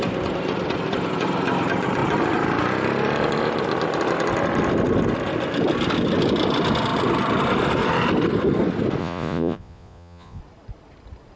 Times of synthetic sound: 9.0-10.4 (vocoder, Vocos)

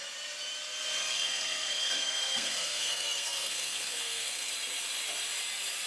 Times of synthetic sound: 1.0-4.5 (codec, SNAC)